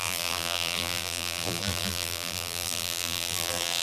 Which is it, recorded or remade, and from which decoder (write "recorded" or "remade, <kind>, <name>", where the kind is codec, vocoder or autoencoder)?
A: remade, vocoder, BigVGAN v2